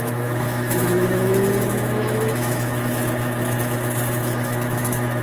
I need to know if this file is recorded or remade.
remade